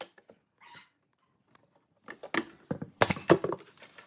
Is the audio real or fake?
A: real